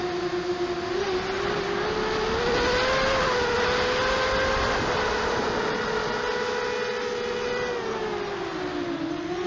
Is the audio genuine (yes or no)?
yes